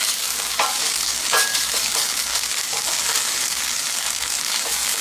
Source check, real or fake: fake